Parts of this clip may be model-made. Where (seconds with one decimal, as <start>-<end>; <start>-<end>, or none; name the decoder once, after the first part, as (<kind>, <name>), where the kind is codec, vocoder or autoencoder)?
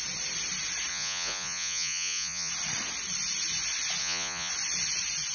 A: 0.9-2.5 (vocoder, Vocos); 4.0-4.5